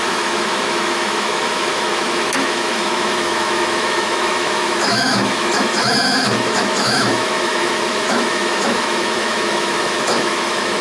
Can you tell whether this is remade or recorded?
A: remade